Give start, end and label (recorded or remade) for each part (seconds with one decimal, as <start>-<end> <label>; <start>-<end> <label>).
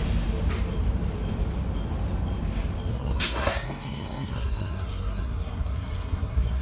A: 0.0-2.9 recorded; 2.9-6.6 remade